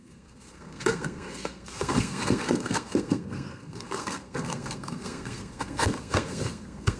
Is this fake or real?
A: fake